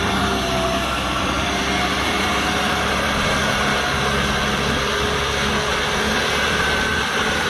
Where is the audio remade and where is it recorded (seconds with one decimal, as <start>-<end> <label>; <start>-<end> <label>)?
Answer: 0.0-2.3 remade; 2.3-2.9 recorded; 2.9-3.4 remade; 3.4-6.3 recorded; 6.3-7.5 remade